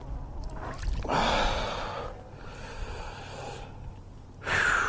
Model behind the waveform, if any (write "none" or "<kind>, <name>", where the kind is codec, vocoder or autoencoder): none